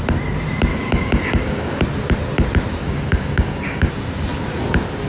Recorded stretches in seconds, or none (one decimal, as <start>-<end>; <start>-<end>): 0.0-0.7; 1.8-2.8; 3.9-5.1